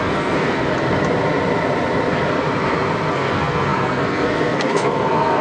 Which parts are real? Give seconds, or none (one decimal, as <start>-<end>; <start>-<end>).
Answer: 0.6-3.1